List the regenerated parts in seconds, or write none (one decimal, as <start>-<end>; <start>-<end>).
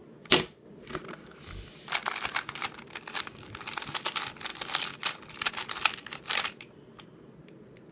none